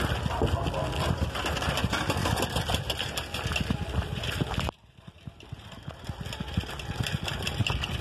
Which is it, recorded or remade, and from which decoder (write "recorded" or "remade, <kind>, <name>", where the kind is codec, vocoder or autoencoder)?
recorded